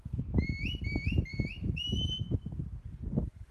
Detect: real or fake real